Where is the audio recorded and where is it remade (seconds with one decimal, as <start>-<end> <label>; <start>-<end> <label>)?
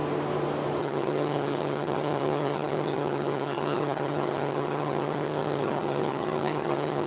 0.0-0.8 recorded; 0.8-7.1 remade